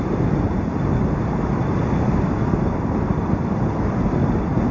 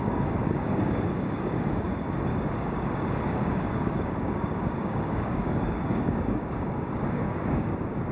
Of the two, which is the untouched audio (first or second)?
first